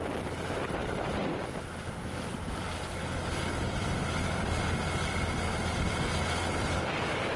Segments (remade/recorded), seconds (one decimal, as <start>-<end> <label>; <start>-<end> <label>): 0.0-0.8 recorded; 0.8-1.4 remade; 1.4-7.4 recorded